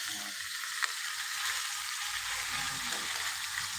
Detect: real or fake real